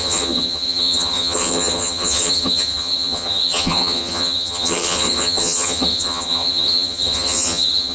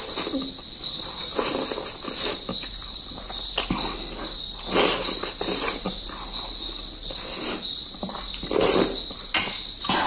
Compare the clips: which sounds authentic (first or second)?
second